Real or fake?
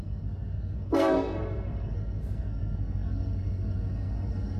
fake